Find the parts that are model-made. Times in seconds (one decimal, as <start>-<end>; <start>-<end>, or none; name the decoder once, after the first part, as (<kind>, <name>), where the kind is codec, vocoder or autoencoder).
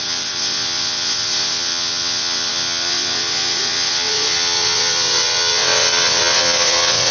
0.0-7.1 (vocoder, WaveNeXt)